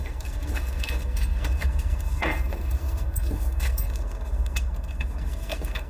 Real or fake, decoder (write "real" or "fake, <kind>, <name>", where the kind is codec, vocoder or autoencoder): fake, codec, SNAC